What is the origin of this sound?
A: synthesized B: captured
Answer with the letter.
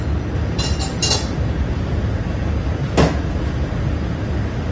B